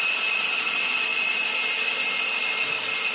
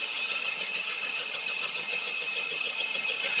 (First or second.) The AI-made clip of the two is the second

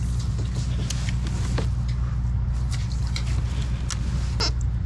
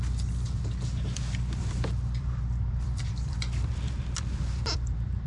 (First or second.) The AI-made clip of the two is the second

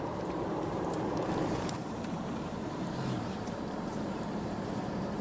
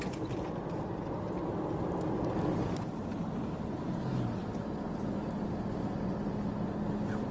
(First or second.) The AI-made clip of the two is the first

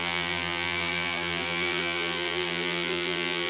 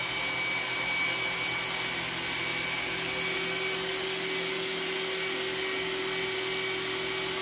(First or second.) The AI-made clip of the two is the first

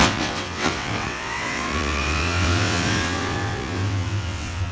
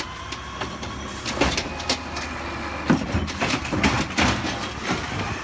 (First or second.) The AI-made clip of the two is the first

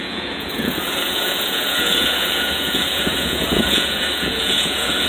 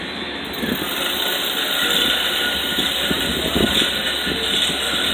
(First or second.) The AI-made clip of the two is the first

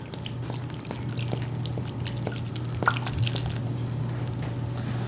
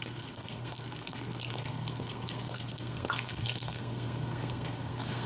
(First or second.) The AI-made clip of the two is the second